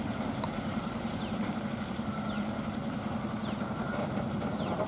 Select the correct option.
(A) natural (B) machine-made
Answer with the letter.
A